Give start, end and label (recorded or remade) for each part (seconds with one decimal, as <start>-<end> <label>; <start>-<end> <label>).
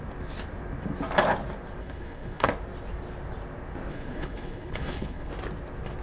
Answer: 0.0-1.8 recorded; 1.8-2.5 remade; 2.5-3.9 recorded; 3.9-5.3 remade; 5.3-6.0 recorded